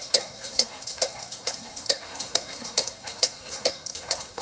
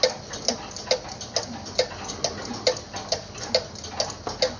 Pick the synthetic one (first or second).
first